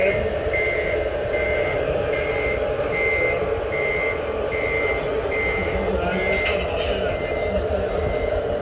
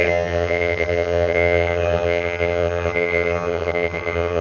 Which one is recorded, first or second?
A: first